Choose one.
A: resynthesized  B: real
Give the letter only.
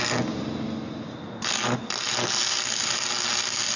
B